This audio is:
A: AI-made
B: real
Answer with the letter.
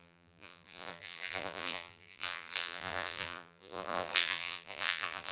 A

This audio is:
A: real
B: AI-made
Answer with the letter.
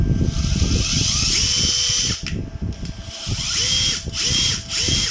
A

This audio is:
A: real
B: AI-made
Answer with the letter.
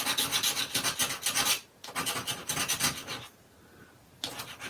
A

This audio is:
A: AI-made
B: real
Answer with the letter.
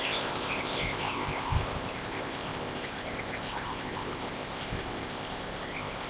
A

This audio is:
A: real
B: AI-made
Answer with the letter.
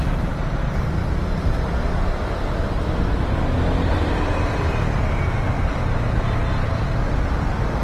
A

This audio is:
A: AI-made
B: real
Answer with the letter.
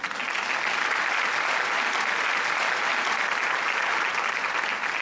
B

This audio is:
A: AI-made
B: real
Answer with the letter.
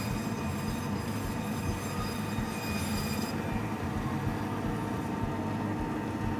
B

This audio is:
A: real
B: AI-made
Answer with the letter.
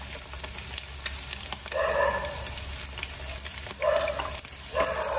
A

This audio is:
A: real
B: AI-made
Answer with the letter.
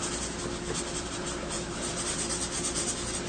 A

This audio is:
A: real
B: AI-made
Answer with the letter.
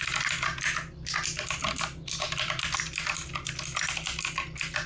A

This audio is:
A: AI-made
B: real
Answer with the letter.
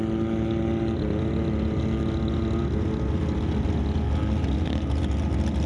B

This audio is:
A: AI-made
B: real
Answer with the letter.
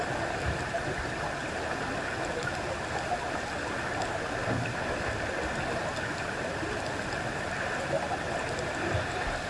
B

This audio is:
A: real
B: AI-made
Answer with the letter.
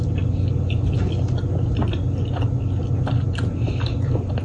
A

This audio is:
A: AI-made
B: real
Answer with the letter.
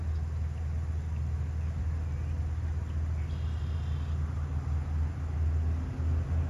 B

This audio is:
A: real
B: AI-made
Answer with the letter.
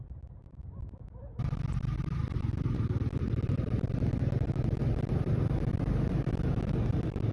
A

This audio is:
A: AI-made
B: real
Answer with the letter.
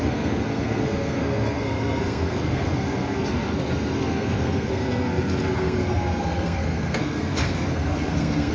A